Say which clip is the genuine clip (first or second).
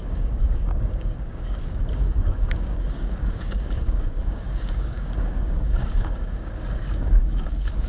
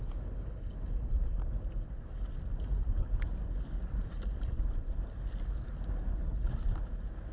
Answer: second